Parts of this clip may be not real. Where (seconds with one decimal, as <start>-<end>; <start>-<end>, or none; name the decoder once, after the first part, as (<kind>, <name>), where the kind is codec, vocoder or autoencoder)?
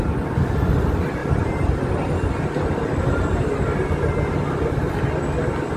none